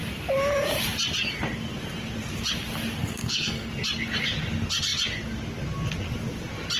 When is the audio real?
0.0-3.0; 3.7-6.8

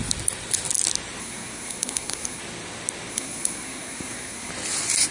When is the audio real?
0.0-1.2; 2.4-3.1; 4.5-5.1

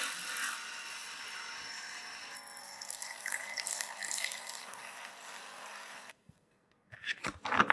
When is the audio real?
0.0-2.6; 7.2-7.7